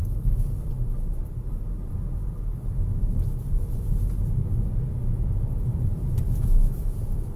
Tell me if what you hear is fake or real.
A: real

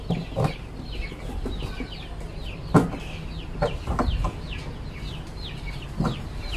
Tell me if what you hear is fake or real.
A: real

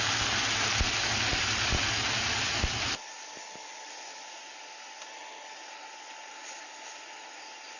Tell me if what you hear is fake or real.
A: real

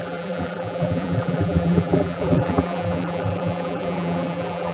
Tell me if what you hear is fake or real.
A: fake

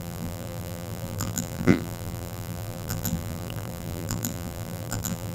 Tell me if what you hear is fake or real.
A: fake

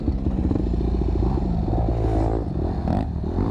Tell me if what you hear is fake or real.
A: real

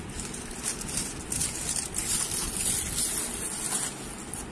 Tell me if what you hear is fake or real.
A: real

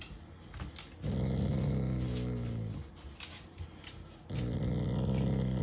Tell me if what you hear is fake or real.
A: real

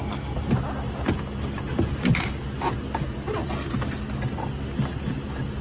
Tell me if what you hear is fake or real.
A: real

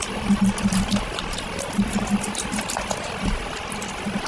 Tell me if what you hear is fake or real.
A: real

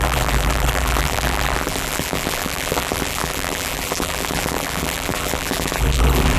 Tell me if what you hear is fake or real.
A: fake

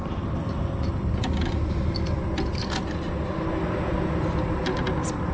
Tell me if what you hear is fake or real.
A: real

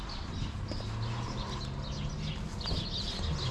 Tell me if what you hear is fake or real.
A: real